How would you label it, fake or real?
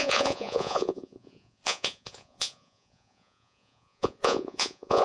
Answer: fake